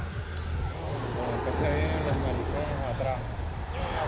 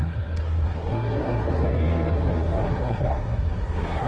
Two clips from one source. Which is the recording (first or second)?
first